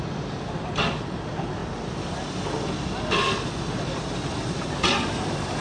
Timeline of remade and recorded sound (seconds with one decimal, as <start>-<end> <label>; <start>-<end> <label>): 0.0-5.6 recorded